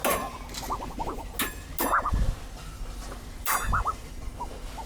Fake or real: real